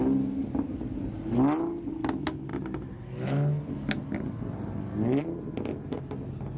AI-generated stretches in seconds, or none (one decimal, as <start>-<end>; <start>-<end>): none